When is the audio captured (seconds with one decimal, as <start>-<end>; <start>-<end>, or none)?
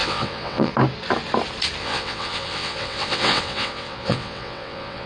0.7-1.8